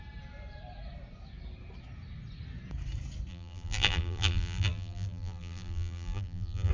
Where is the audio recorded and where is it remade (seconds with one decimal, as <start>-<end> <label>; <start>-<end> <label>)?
0.0-3.3 recorded; 3.3-6.7 remade